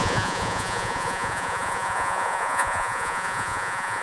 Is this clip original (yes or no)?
no